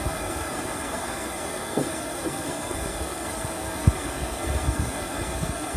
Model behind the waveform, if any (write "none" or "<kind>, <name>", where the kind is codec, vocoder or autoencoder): codec, SNAC